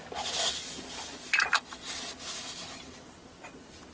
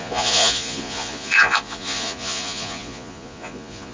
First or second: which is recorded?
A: first